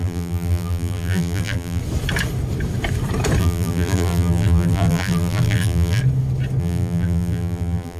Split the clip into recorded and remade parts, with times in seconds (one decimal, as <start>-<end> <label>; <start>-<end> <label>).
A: 0.0-1.8 remade; 1.8-3.4 recorded; 3.4-6.0 remade; 6.0-6.6 recorded; 6.6-8.0 remade

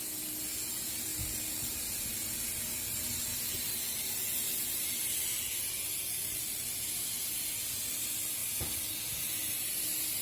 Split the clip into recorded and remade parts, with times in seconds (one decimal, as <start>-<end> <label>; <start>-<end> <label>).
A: 0.0-10.2 recorded

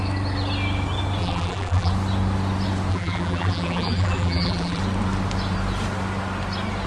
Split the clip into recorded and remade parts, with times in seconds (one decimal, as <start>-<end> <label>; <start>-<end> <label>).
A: 0.0-1.2 recorded; 1.2-1.9 remade; 1.9-2.9 recorded; 2.9-4.8 remade; 4.8-6.9 recorded

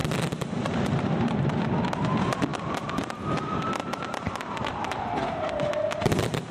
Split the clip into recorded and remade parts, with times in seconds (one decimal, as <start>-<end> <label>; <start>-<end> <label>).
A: 0.0-1.5 remade; 1.5-2.5 recorded; 2.5-4.8 remade; 4.8-6.5 recorded

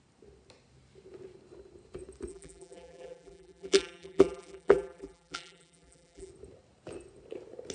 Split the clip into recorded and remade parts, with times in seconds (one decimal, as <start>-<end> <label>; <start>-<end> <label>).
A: 0.0-2.3 recorded; 2.3-6.3 remade; 6.3-7.7 recorded